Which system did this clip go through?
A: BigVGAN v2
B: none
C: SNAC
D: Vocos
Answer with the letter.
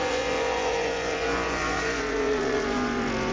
D